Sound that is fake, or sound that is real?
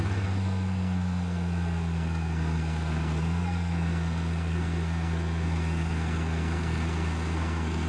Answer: fake